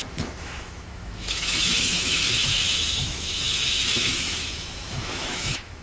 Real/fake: fake